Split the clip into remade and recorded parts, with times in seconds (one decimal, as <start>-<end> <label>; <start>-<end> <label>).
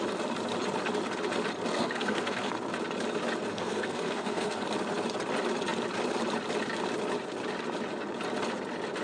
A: 0.0-1.7 recorded; 1.7-2.5 remade; 2.5-3.5 recorded; 3.5-4.6 remade; 4.6-9.0 recorded